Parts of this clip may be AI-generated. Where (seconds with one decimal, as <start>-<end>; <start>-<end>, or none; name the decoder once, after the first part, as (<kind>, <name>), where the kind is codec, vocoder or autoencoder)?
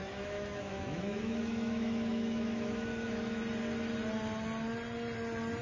0.0-3.4 (autoencoder, DAC-VAE)